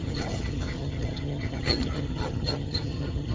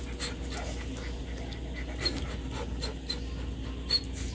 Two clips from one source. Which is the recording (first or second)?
second